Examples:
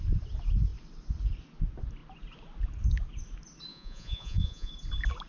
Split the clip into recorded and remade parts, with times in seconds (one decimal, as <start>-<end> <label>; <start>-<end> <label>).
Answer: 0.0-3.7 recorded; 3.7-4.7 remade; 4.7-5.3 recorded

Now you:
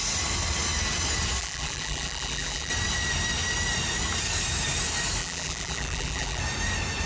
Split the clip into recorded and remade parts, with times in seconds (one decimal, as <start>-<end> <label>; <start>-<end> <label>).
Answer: 0.0-1.4 recorded; 1.4-2.7 remade; 2.7-5.2 recorded; 5.2-6.4 remade; 6.4-7.1 recorded

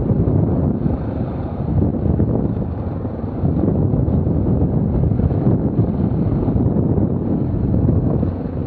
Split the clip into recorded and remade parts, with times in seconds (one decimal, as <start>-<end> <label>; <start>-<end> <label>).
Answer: 0.0-8.7 recorded

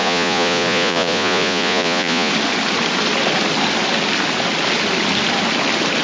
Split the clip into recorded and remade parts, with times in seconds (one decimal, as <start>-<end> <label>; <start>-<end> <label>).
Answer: 0.0-2.3 remade; 2.3-6.0 recorded